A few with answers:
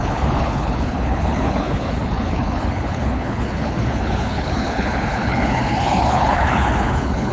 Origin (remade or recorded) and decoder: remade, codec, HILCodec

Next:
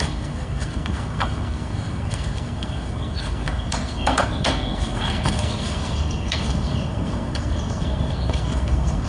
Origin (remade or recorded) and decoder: remade, codec, SNAC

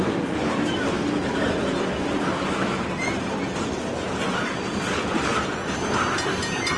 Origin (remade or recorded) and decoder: recorded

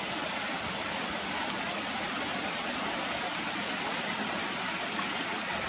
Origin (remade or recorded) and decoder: recorded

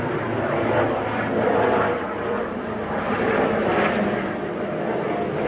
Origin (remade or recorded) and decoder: recorded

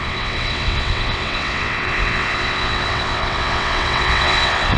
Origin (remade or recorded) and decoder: remade, vocoder, WaveNeXt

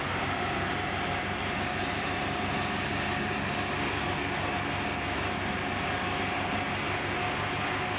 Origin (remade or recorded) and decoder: recorded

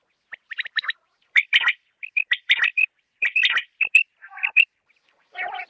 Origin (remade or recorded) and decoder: recorded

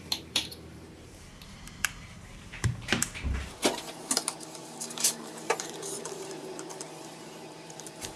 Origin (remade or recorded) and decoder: remade, vocoder, BigVGAN v2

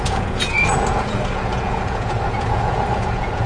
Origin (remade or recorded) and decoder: remade, vocoder, Vocos